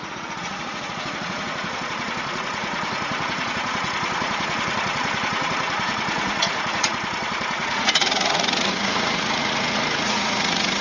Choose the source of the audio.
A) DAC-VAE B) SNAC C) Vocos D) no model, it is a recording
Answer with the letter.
C